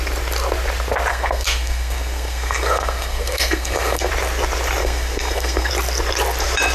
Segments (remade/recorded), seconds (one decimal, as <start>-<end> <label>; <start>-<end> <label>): 0.0-1.1 recorded; 1.1-4.1 remade; 4.1-4.8 recorded; 4.8-5.7 remade; 5.7-6.7 recorded